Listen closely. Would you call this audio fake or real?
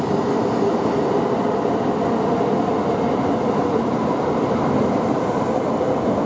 real